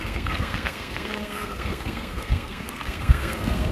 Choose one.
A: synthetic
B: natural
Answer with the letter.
A